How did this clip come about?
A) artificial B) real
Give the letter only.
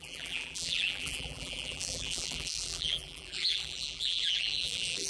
A